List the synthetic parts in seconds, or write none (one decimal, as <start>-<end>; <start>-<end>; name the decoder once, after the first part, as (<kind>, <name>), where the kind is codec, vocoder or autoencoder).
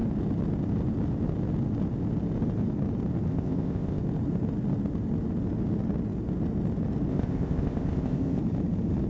3.3-4.0 (codec, ZipCodec); 7.1-8.4